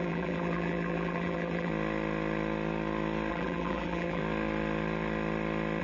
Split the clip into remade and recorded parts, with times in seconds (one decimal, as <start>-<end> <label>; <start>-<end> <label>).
0.0-1.7 remade; 1.7-3.3 recorded; 3.3-4.2 remade; 4.2-5.8 recorded